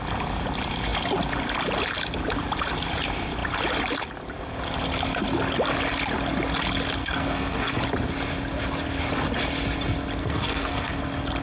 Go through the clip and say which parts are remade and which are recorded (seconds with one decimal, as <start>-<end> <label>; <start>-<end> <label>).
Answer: 0.0-7.0 recorded; 7.0-7.8 remade; 7.8-10.2 recorded; 10.2-11.0 remade; 11.0-11.4 recorded